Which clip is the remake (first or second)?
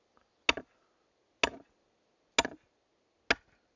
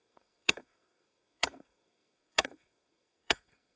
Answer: second